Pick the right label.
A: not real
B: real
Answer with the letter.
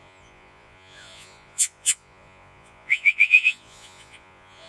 A